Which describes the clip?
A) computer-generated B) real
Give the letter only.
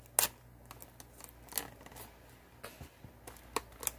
B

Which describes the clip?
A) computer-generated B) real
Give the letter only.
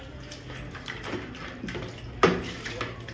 B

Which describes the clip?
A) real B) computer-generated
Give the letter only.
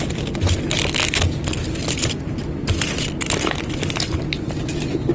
A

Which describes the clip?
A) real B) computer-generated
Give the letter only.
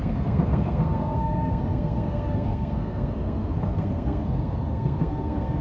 B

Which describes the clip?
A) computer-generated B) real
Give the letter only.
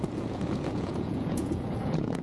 A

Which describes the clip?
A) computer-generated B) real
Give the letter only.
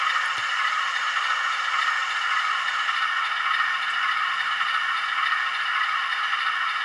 B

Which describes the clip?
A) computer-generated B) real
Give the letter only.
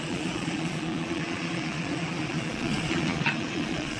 A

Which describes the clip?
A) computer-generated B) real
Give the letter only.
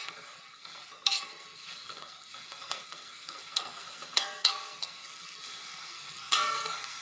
A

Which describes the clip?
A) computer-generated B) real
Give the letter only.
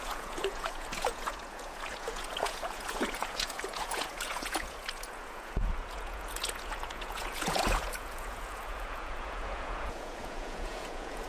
A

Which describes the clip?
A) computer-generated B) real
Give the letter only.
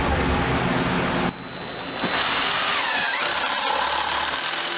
B